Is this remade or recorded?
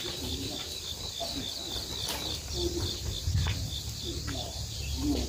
recorded